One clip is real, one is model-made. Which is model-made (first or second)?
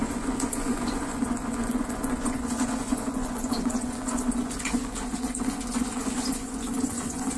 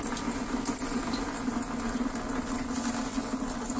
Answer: first